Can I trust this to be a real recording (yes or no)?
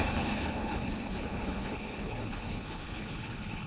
no